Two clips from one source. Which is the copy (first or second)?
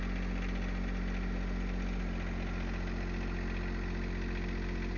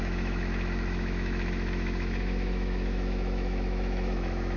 second